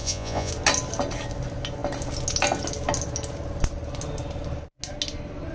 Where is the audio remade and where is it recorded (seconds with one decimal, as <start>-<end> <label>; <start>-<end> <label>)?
0.0-0.5 remade; 0.5-5.5 recorded